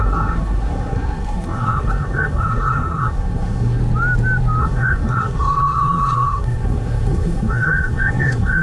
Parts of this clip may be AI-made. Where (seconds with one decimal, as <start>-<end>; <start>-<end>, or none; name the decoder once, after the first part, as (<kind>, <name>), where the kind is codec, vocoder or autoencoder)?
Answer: 0.0-3.8 (codec, SNAC); 4.6-8.6